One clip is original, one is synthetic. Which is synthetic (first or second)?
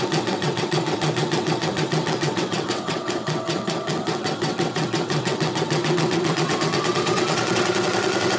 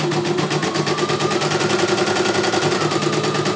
first